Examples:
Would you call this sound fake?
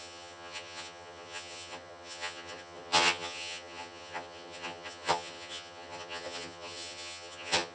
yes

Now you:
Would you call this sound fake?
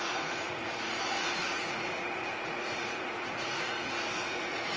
yes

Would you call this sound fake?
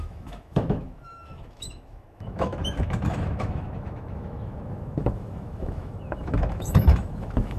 yes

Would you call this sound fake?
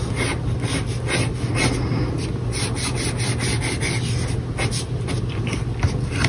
no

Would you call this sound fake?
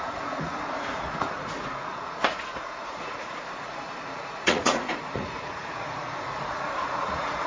yes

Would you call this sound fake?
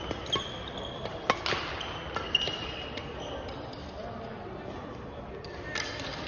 no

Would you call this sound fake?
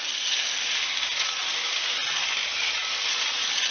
no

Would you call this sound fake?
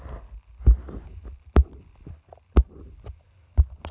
no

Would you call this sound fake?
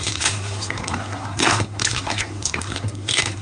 yes